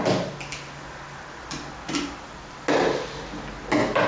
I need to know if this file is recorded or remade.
recorded